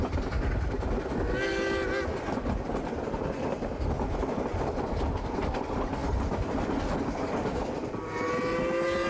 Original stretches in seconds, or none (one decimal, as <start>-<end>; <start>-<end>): 0.0-9.1